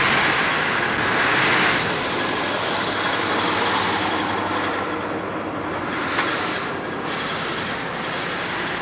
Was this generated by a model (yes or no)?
no